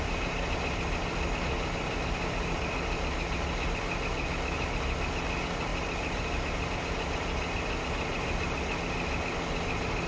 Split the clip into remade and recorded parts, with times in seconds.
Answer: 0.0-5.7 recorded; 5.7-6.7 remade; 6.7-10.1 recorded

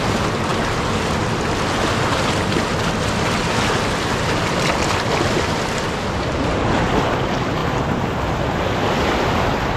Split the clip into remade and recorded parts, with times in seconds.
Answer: 0.0-9.8 recorded